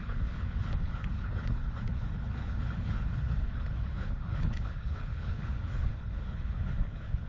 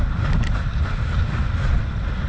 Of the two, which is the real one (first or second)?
second